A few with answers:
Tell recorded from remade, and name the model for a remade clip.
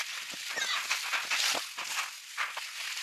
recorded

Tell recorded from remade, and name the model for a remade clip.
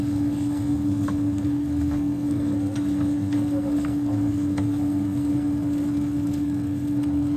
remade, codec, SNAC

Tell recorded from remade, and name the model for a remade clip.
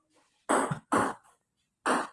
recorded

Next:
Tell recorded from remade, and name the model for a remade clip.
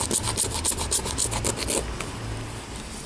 recorded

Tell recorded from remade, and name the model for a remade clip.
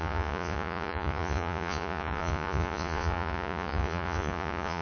remade, vocoder, Vocos